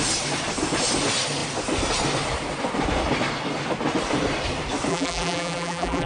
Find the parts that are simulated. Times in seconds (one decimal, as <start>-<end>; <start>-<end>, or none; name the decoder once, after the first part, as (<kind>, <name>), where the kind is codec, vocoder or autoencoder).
4.9-6.1 (vocoder, BigVGAN v2)